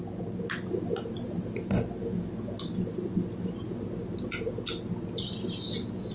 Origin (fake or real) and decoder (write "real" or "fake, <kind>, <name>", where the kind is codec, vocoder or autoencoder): real